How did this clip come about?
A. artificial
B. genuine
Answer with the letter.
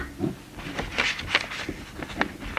B